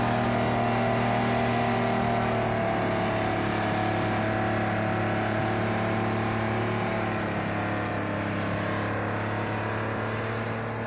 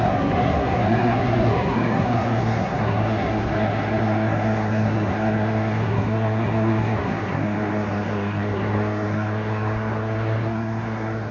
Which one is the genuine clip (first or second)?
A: first